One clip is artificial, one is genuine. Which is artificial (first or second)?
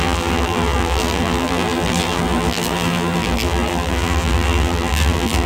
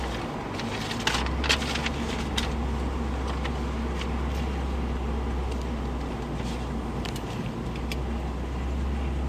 first